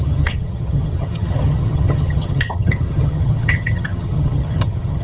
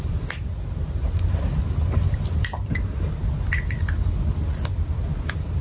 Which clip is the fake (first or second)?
first